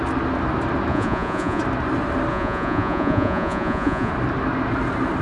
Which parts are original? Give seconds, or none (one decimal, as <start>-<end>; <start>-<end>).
0.0-0.9; 1.6-2.3; 4.1-5.2